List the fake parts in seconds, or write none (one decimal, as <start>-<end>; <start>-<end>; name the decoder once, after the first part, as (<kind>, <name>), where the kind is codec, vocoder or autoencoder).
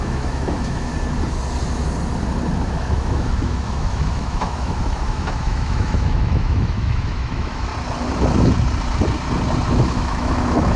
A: 0.0-0.9 (autoencoder, DAC-VAE); 2.6-7.7; 9.7-10.8